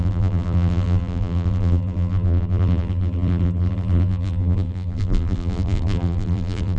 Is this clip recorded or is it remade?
remade